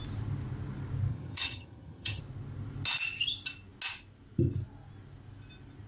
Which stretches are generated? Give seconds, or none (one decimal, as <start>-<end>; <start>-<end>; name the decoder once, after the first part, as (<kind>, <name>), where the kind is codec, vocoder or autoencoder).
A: 1.1-2.2 (vocoder, HiFi-GAN)